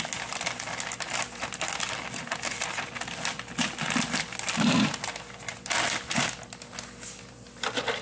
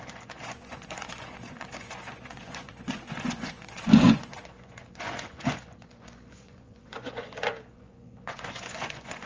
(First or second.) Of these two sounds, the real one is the first